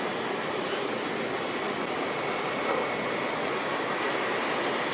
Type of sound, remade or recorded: recorded